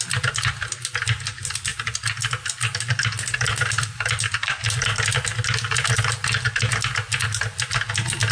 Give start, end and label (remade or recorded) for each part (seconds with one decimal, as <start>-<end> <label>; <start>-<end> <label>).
0.0-8.3 recorded